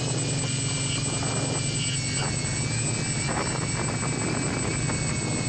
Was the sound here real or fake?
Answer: real